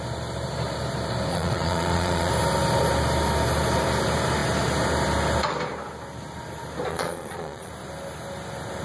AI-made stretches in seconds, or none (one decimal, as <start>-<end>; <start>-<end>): 1.3-2.3; 6.9-7.7